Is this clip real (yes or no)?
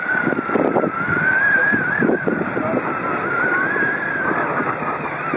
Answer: yes